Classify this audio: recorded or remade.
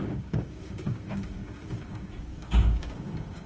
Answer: remade